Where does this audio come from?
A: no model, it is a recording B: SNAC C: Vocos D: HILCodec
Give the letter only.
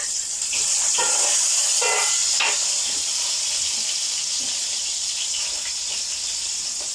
A